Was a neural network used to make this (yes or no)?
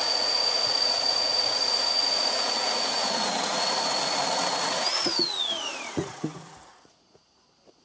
yes